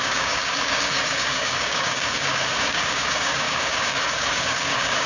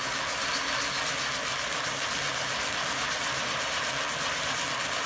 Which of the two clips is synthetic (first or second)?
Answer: first